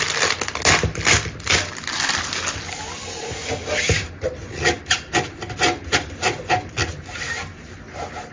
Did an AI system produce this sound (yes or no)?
no